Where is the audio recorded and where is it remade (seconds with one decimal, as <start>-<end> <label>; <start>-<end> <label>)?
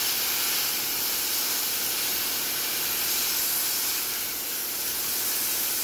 0.0-5.8 recorded